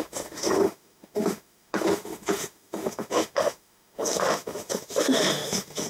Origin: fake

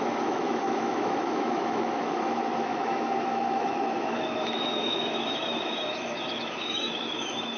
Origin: fake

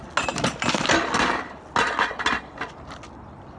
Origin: real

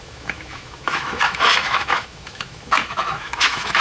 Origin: fake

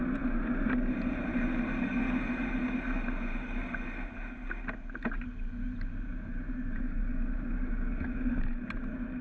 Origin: real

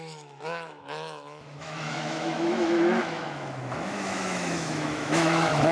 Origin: fake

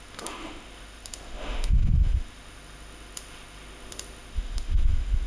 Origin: fake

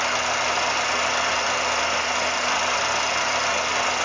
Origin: real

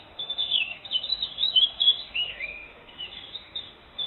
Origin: fake